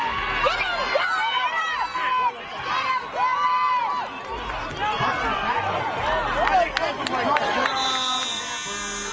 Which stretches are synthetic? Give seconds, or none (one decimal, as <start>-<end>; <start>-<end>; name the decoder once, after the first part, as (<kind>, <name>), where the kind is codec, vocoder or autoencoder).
none